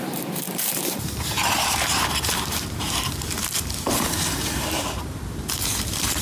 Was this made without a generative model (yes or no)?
no